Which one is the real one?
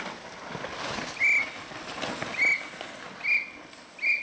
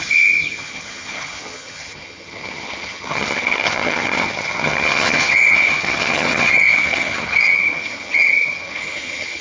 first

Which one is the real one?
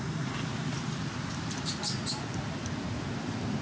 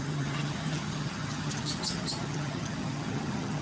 first